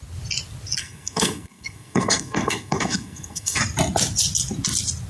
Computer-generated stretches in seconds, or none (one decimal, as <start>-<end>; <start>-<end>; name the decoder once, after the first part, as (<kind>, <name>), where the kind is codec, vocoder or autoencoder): 0.8-3.6 (codec, SNAC)